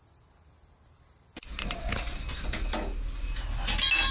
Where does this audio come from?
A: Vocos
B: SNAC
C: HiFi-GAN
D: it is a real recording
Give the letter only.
D